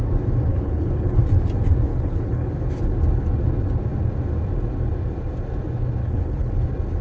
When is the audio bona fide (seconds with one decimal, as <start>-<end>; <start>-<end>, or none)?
0.0-0.5; 1.2-1.9; 2.5-6.0; 6.5-7.0